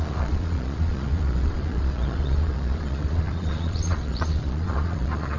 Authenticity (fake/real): fake